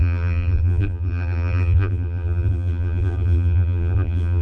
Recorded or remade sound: remade